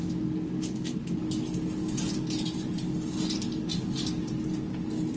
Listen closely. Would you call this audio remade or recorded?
recorded